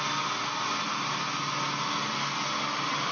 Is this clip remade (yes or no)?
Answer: no